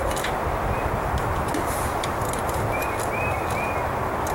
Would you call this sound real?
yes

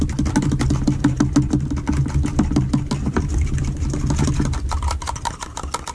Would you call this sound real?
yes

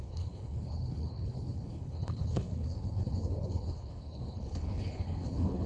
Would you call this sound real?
no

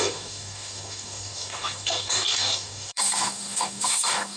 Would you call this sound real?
no